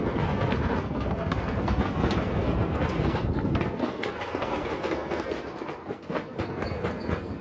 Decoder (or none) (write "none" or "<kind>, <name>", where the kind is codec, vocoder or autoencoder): codec, SNAC